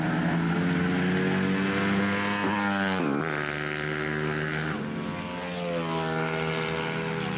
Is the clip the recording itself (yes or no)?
yes